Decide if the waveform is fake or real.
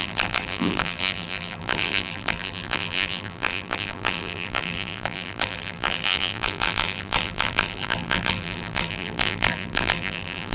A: fake